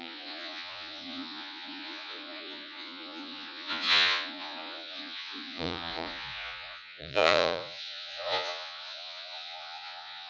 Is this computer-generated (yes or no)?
yes